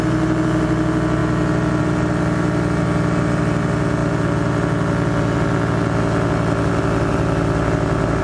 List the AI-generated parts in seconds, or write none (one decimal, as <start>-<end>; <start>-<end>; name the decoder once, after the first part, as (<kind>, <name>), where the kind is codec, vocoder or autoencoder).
none